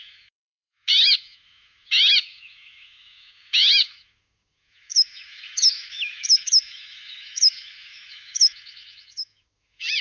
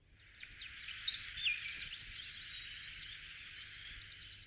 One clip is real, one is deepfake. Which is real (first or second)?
second